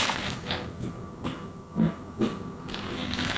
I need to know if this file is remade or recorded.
remade